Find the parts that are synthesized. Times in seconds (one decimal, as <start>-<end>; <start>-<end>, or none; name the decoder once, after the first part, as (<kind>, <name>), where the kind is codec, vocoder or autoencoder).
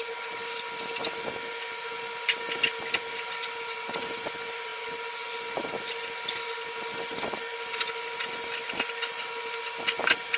none